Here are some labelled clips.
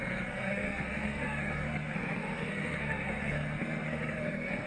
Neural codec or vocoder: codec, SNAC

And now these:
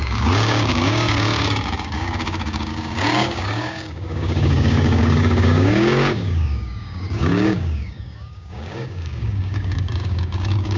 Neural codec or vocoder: codec, DAC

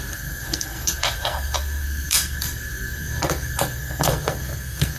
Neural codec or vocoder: codec, SNAC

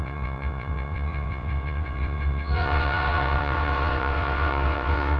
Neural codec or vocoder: vocoder, WaveNeXt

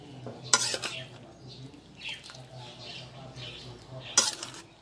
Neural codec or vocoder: none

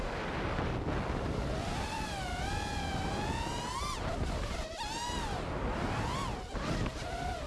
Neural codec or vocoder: none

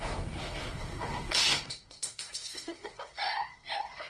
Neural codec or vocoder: codec, SNAC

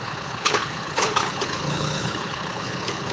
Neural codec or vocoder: codec, HILCodec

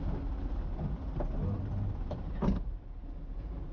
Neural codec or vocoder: none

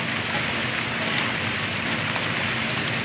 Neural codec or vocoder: vocoder, BigVGAN v2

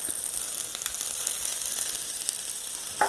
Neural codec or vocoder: none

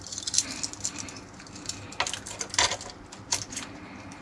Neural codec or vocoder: none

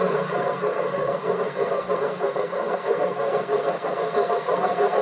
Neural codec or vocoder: codec, SNAC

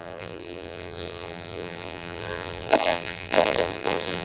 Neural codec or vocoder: vocoder, BigVGAN v2